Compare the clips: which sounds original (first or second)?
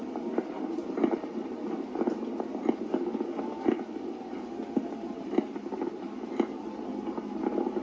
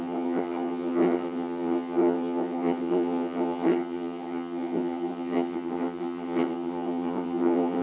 first